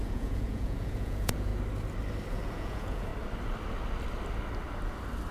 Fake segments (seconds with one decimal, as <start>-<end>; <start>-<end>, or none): 0.0-1.5; 2.3-3.1